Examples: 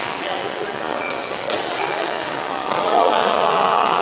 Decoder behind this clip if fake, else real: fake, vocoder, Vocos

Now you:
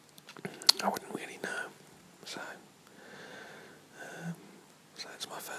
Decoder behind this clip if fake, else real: real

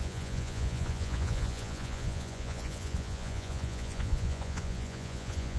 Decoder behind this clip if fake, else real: fake, vocoder, Vocos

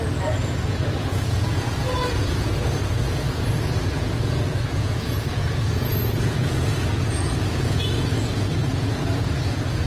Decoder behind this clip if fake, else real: fake, vocoder, Vocos